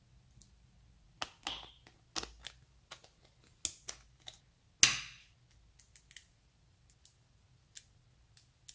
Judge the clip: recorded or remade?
recorded